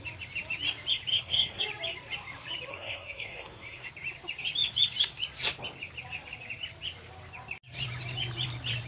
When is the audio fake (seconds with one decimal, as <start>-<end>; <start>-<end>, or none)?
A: 1.1-1.6; 2.7-3.9